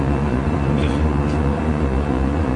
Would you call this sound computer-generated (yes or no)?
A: yes